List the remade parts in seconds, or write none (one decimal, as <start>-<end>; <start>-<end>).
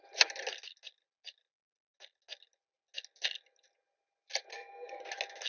4.5-5.0